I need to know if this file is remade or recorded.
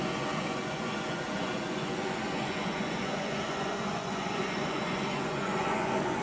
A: remade